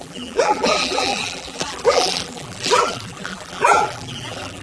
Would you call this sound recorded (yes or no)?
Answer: no